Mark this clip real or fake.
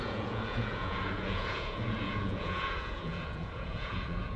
fake